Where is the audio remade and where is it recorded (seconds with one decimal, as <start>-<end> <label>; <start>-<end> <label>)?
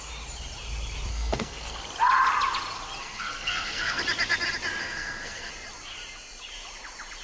0.0-1.1 recorded; 1.1-1.8 remade; 1.8-3.0 recorded; 3.0-4.0 remade; 4.0-4.8 recorded; 4.8-5.5 remade; 5.5-7.2 recorded